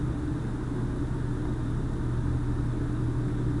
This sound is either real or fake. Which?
real